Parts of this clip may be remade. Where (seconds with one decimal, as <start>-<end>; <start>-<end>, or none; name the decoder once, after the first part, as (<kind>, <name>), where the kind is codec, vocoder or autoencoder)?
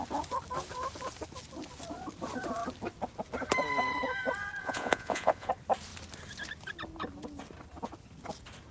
4.6-5.5 (vocoder, Vocos)